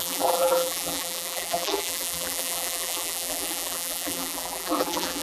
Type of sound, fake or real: fake